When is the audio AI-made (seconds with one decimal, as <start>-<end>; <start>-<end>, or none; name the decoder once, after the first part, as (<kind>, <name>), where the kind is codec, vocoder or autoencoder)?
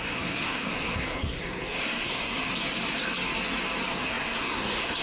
0.0-2.5 (codec, SNAC); 3.9-5.0